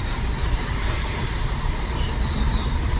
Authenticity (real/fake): fake